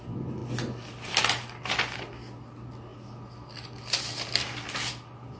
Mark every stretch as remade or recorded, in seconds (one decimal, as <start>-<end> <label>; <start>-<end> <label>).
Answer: 0.0-5.4 recorded